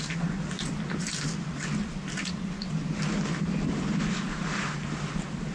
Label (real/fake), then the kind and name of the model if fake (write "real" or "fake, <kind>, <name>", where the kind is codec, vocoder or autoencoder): real